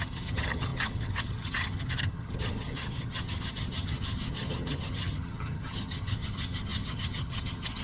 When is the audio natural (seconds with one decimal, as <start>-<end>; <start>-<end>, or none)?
none